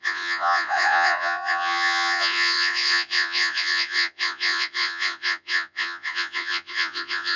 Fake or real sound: fake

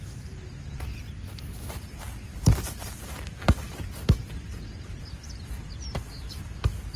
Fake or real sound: real